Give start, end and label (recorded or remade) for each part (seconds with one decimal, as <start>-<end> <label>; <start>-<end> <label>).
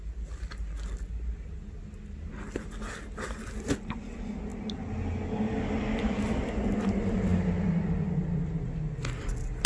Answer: 0.0-9.7 recorded